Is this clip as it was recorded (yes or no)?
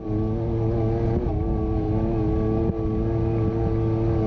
yes